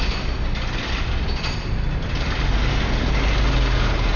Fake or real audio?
real